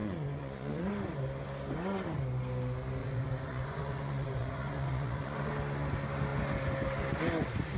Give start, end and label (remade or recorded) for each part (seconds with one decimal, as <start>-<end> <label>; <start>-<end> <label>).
0.0-0.9 remade; 0.9-3.0 recorded; 3.0-5.5 remade; 5.5-7.8 recorded